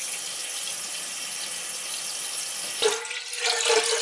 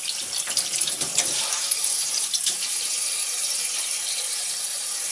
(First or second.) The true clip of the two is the first